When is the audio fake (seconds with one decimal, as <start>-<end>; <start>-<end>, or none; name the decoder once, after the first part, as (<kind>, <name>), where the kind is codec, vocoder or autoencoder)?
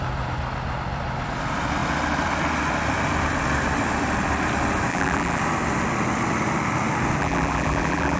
4.9-5.4 (vocoder, BigVGAN v2); 7.2-8.2